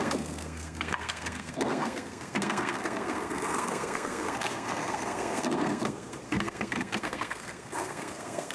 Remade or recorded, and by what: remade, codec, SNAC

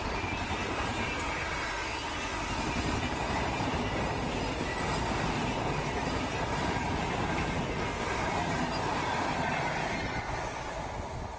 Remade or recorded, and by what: recorded